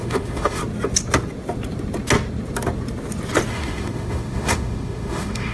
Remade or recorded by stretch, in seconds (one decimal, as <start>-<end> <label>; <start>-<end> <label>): 0.0-0.6 remade; 0.6-3.5 recorded; 3.5-5.5 remade